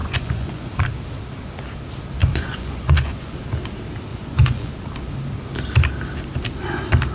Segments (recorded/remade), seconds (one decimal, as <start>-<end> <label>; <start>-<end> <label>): 0.0-0.8 remade; 0.8-2.2 recorded; 2.2-3.4 remade; 3.4-4.1 recorded; 4.1-4.7 remade; 4.7-7.1 recorded